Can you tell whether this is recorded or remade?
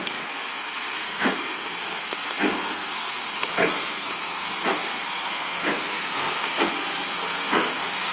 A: remade